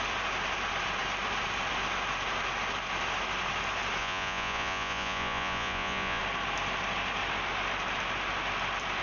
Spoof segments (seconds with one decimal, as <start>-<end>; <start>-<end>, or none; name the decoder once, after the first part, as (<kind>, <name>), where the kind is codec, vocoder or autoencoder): 4.0-6.2 (vocoder, Vocos)